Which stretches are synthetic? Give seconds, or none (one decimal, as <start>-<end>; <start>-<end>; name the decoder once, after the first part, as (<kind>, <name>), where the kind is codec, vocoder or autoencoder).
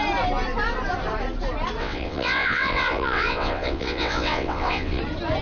1.8-5.0 (vocoder, WaveNeXt)